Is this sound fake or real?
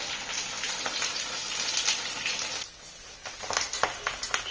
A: real